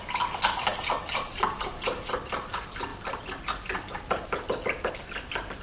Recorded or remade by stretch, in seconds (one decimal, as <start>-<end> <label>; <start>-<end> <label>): 0.0-5.6 recorded